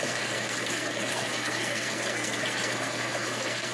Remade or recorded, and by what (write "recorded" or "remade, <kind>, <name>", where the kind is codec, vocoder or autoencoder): remade, codec, SNAC